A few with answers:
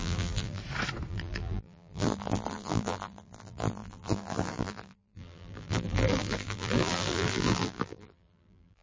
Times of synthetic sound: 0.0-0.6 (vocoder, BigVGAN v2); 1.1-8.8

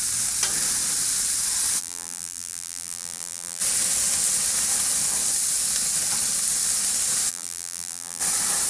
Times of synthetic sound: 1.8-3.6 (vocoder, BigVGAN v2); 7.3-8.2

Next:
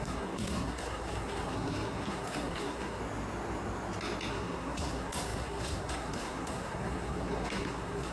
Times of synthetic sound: 0.0-3.0 (codec, SNAC); 4.3-8.1

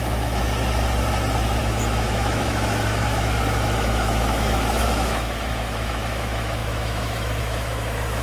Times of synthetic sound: 0.0-0.4 (autoencoder, DAC-VAE); 1.6-8.2

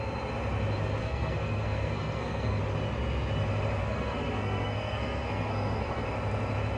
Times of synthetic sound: 1.0-2.6 (codec, SNAC); 3.8-6.0

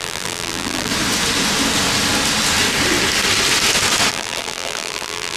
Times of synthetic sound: 0.0-0.9 (vocoder, BigVGAN v2); 4.1-5.4